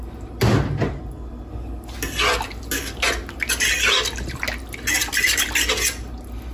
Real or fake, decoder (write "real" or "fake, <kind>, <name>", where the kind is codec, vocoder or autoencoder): real